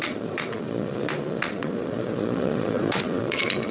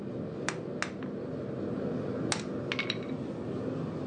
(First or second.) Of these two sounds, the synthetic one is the first